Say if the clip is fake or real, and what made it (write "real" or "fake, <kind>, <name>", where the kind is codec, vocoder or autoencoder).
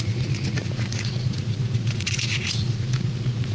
fake, vocoder, Vocos